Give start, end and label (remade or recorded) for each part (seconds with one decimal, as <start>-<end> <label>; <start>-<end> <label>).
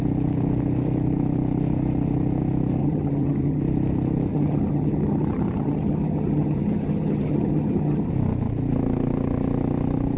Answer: 0.0-2.8 recorded; 2.8-3.6 remade; 3.6-4.3 recorded; 4.3-8.1 remade; 8.1-10.2 recorded